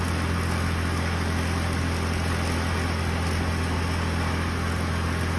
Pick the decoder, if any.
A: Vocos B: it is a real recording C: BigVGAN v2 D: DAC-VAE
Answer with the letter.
B